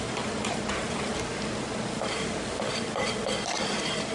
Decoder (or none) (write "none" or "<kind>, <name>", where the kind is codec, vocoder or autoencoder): none